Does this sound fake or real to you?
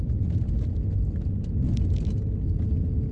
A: real